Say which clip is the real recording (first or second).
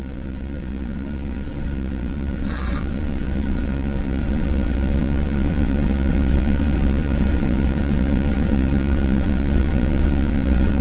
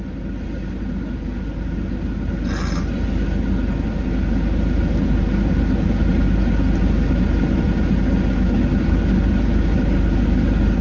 second